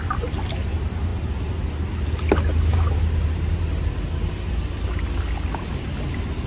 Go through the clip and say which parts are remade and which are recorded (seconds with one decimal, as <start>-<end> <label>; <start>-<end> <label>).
0.0-2.7 recorded; 2.7-3.6 remade; 3.6-6.5 recorded